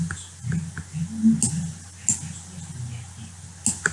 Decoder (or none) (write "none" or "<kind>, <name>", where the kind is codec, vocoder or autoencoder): none